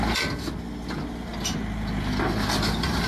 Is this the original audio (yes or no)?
yes